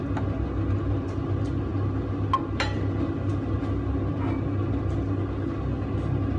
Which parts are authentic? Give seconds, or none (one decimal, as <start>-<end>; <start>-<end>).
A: 0.0-6.4